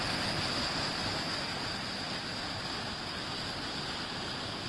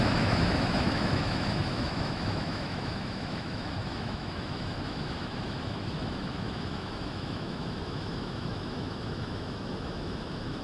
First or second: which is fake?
second